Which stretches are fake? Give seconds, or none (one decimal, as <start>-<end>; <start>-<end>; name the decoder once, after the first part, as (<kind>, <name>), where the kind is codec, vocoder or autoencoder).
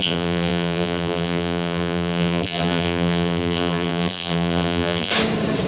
0.0-5.1 (vocoder, BigVGAN v2)